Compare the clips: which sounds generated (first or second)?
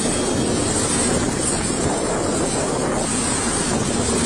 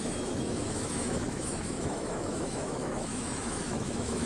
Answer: second